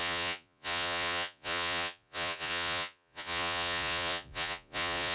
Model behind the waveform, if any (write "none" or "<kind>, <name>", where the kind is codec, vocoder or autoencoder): vocoder, Vocos